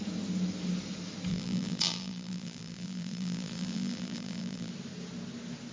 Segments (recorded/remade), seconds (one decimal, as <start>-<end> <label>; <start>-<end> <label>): 0.0-1.3 recorded; 1.3-4.7 remade; 4.7-5.7 recorded